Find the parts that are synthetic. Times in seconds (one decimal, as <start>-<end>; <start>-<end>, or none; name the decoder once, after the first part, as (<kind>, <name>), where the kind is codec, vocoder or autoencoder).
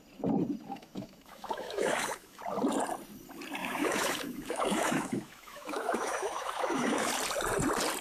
0.7-2.4 (autoencoder, DAC-VAE); 3.6-7.1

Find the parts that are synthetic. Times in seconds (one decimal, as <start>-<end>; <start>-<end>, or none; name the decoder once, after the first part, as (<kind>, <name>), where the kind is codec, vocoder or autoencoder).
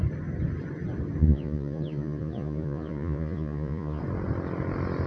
1.2-4.0 (vocoder, Vocos)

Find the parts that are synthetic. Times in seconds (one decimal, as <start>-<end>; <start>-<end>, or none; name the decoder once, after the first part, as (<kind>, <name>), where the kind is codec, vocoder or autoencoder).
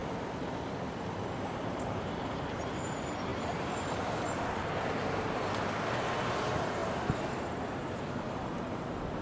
1.0-9.2 (vocoder, BigVGAN v2)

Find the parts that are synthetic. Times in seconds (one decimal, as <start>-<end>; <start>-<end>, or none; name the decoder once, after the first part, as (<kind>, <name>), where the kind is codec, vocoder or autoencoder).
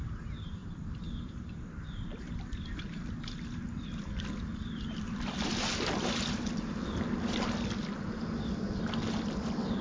none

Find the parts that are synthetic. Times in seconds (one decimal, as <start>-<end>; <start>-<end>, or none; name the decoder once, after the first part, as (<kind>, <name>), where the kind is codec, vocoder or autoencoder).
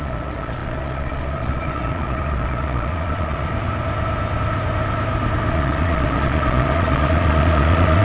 0.0-3.5 (vocoder, Vocos); 5.5-8.0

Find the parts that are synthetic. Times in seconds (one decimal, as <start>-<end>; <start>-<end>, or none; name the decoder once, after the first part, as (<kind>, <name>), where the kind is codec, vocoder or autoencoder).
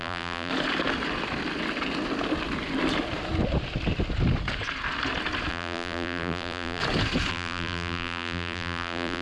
0.0-0.5 (vocoder, BigVGAN v2); 5.5-6.8; 7.3-9.2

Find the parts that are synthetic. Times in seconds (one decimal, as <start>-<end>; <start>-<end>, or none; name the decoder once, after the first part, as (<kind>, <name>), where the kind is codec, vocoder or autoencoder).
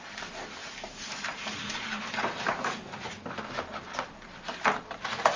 0.6-3.4 (vocoder, BigVGAN v2)